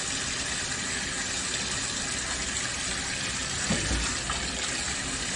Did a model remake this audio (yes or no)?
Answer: no